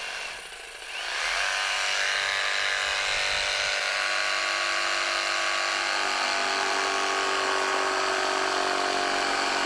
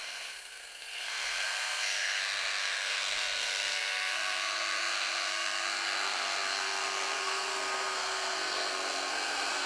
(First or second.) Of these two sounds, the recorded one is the first